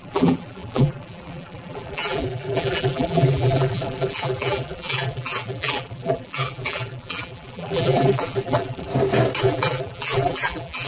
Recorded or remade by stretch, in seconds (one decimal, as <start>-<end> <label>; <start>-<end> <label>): 0.0-8.9 remade; 8.9-9.4 recorded; 9.4-10.9 remade